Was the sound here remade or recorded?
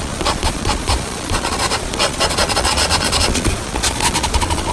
remade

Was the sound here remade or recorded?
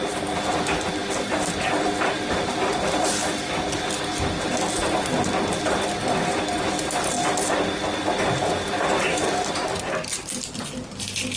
recorded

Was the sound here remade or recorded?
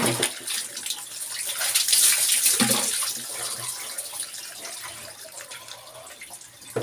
recorded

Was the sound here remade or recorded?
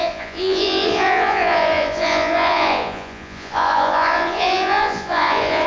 remade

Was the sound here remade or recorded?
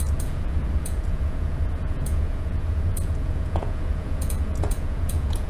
remade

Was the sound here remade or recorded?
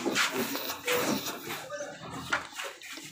recorded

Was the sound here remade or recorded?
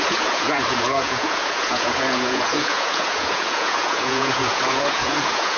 remade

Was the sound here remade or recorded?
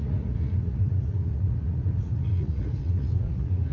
remade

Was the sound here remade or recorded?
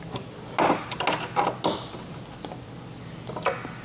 recorded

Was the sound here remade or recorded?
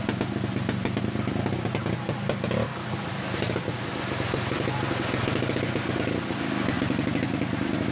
recorded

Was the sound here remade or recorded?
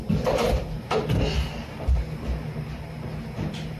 recorded